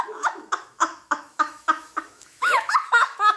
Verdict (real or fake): fake